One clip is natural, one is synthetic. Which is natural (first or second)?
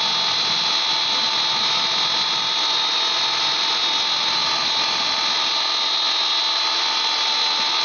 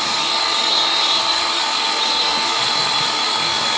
first